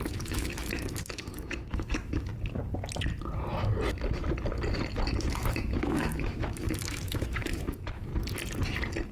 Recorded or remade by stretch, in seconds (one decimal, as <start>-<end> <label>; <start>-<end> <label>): 0.0-2.3 remade; 2.3-5.3 recorded; 5.3-8.1 remade; 8.1-9.1 recorded